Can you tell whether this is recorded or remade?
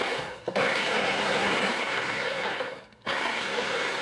remade